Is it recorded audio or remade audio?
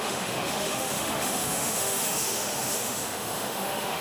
remade